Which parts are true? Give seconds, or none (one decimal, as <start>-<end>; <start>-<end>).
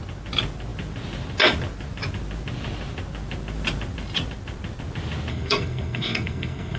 0.0-5.3